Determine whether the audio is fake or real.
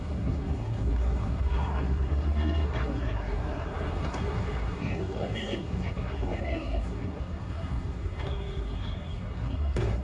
fake